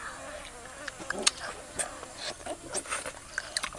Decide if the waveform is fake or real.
real